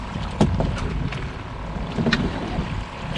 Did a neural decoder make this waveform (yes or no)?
no